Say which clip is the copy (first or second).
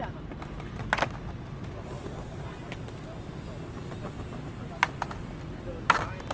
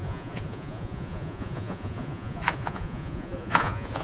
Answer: second